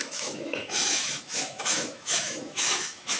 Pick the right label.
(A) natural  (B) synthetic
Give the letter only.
B